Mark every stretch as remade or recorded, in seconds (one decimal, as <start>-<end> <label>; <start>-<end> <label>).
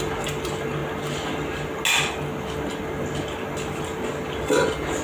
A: 0.0-5.0 recorded